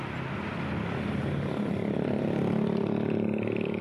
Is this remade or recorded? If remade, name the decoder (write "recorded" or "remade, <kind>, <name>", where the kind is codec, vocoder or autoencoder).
recorded